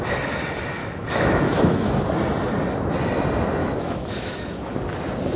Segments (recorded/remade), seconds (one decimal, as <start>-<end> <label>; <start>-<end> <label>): 0.0-0.8 recorded; 0.8-2.0 remade; 2.0-3.6 recorded; 3.6-4.8 remade; 4.8-5.4 recorded